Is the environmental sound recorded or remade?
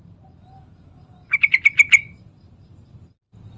recorded